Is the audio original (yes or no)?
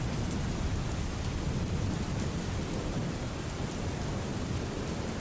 yes